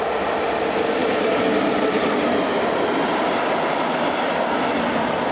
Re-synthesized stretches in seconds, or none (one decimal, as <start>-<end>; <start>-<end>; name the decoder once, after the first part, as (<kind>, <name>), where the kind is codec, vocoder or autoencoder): none